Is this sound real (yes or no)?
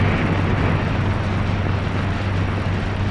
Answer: yes